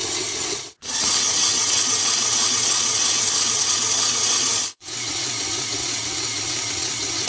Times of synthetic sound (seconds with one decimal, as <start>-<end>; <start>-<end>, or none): 0.0-7.3